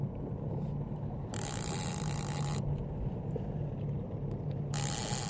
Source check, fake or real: real